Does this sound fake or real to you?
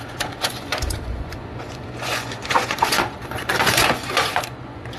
fake